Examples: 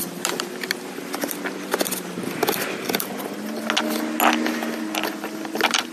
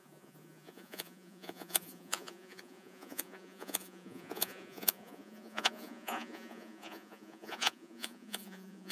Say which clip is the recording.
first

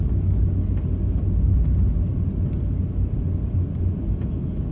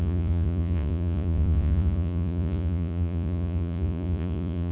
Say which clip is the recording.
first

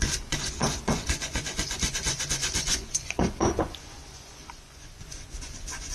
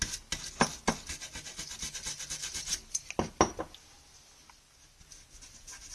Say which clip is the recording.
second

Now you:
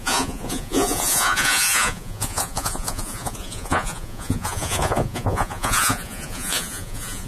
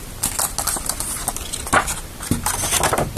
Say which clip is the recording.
second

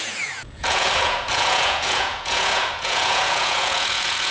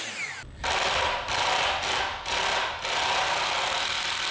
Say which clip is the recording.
second